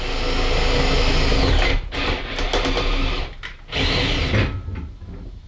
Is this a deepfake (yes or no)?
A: no